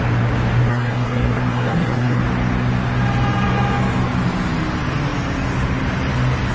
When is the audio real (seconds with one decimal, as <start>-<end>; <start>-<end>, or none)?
0.0-0.7; 2.2-6.5

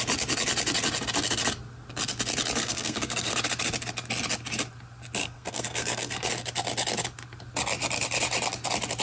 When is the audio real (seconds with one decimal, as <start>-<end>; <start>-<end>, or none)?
0.0-2.6; 3.3-5.2; 6.3-9.0